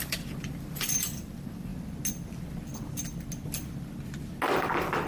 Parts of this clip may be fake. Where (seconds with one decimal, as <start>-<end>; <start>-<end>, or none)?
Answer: 0.0-1.7; 4.5-5.1